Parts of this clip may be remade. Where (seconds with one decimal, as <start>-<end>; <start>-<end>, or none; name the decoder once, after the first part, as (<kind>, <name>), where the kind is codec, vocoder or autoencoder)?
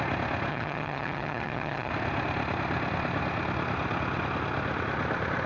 0.5-1.9 (vocoder, HiFi-GAN)